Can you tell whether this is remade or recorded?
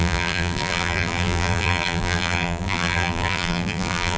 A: remade